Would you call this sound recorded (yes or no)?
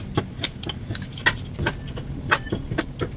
yes